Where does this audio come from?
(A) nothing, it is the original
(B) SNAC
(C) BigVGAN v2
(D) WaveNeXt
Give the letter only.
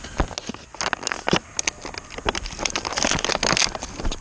A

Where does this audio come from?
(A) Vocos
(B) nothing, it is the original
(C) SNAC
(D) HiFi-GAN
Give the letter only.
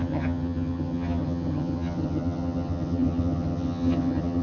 D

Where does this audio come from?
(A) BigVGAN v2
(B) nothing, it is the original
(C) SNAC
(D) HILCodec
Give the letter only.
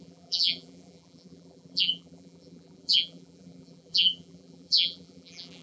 A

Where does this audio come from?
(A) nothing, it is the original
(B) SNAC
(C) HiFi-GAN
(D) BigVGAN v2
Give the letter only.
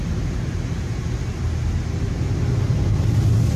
A